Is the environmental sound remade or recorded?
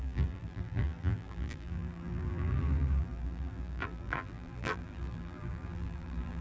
remade